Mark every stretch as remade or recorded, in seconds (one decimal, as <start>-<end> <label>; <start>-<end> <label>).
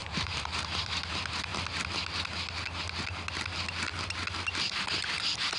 0.0-0.6 remade; 0.6-5.6 recorded